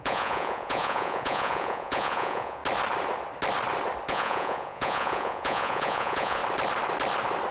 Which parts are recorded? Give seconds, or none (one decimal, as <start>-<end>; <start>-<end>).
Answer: 2.6-4.1; 6.4-7.5